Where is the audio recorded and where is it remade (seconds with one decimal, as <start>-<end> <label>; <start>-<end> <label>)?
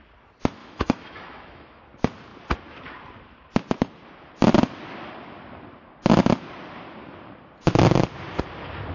0.0-0.6 recorded; 0.6-1.8 remade; 1.8-8.9 recorded